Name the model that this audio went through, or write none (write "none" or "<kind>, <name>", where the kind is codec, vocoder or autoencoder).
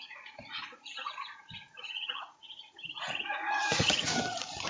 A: vocoder, Vocos